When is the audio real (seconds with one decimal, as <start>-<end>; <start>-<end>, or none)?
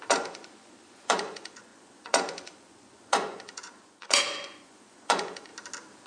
5.5-6.1